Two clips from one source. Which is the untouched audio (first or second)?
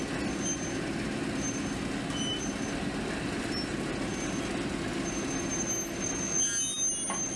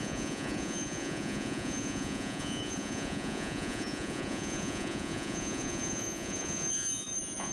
first